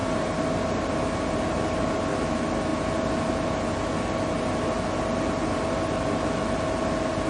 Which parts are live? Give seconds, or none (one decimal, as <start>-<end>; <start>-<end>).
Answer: 0.0-7.3